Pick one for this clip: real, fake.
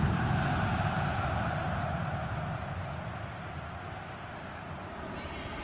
fake